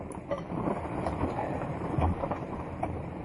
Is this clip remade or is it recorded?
remade